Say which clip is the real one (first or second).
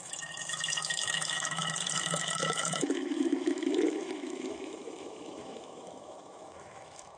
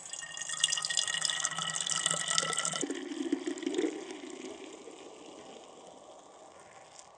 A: second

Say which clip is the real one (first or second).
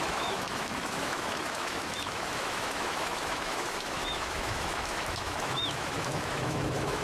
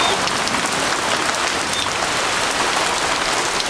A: second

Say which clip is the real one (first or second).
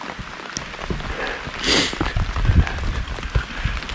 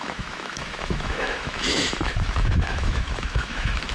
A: first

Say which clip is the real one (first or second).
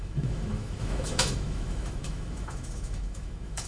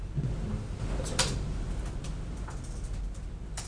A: second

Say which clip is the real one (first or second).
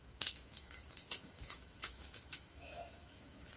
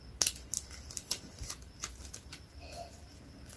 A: second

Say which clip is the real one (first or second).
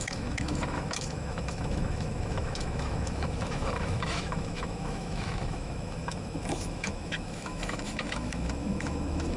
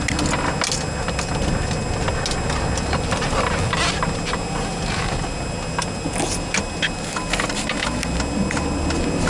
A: second